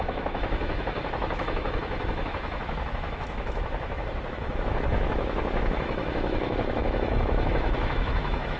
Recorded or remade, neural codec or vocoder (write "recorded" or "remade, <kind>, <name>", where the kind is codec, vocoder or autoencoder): remade, autoencoder, DAC-VAE